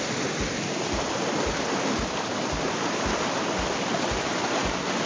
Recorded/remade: recorded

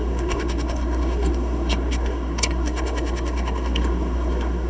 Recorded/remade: remade